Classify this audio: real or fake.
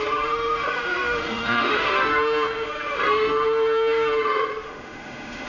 fake